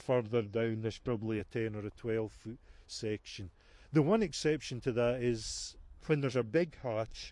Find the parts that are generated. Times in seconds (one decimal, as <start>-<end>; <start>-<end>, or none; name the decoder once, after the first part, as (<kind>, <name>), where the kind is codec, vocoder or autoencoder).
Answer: 0.0-1.4 (codec, SNAC); 5.8-7.3